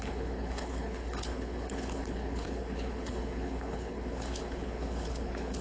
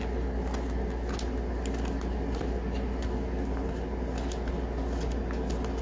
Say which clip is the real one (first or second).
second